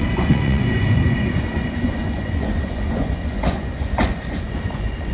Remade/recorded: remade